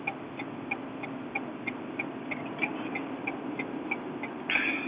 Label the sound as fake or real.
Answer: real